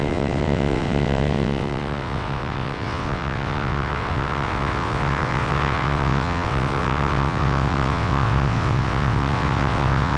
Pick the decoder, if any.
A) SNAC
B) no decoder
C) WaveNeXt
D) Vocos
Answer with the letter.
C